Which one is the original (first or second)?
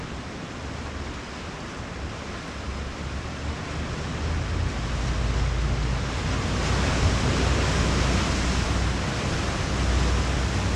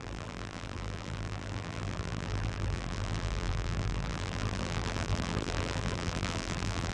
first